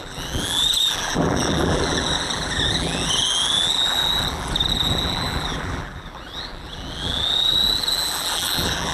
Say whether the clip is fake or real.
fake